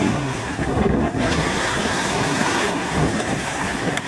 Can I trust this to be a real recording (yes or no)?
no